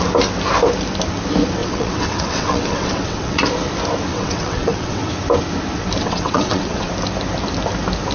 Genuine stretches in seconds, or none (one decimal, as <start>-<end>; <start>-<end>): 0.0-1.6; 3.4-4.1; 5.1-6.0; 6.9-8.1